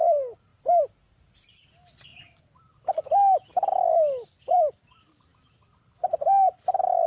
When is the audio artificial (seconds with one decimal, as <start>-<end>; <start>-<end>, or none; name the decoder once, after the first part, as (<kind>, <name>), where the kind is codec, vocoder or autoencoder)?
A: 0.0-0.5 (vocoder, BigVGAN v2); 1.4-2.1; 4.4-7.1